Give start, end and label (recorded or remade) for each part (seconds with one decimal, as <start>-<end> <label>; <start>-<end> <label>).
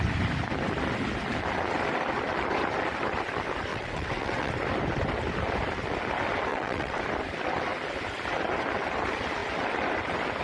0.0-3.7 recorded; 3.7-4.5 remade; 4.5-6.5 recorded; 6.5-7.0 remade; 7.0-10.4 recorded